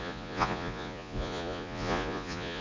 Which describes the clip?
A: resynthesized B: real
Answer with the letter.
A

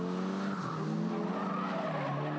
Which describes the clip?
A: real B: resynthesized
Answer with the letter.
A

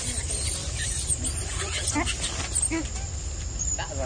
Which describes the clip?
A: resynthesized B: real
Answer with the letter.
B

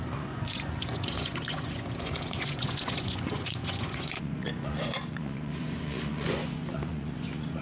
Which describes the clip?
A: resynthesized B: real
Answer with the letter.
A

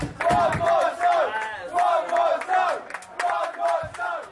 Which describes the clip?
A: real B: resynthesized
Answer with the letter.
A